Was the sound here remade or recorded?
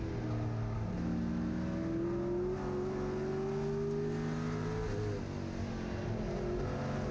recorded